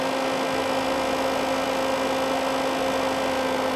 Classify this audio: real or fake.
real